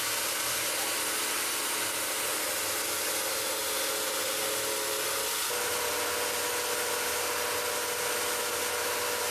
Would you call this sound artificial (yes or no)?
no